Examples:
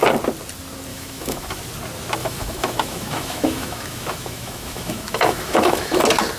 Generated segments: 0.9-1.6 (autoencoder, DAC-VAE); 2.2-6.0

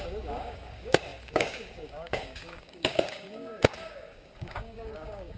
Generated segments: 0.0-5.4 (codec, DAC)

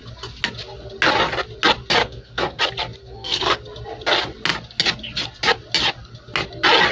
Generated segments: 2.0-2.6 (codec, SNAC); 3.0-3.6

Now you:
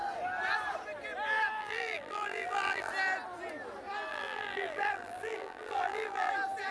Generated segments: 1.6-2.9 (vocoder, BigVGAN v2); 4.1-6.3

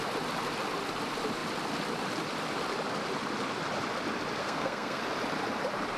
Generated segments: 4.4-5.0 (codec, SNAC)

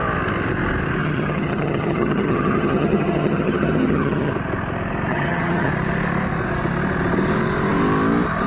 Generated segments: 1.0-4.3 (vocoder, HiFi-GAN); 5.1-5.7